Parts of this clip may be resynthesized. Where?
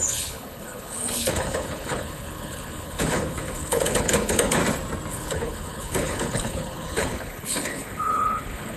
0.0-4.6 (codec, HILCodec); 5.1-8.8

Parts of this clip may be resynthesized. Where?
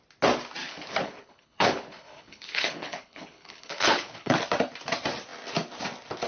0.6-4.4 (codec, HILCodec)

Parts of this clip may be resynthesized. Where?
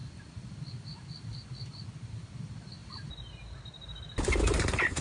none